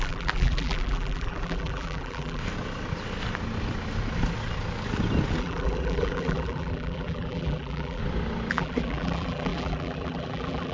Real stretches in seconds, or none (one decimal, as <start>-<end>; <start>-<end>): 2.4-5.4; 8.0-8.5